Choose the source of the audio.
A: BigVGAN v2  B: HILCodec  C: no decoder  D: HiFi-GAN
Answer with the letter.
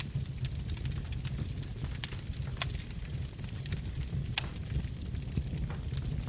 C